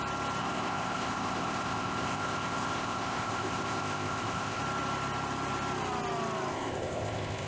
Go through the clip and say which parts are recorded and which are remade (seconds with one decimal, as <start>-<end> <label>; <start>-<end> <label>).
0.0-0.4 recorded; 0.4-4.6 remade; 4.6-6.5 recorded; 6.5-7.5 remade